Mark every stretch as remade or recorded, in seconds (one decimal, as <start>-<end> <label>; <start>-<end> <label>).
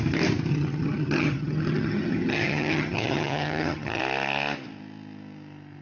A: 0.0-0.5 recorded; 0.5-4.0 remade; 4.0-5.8 recorded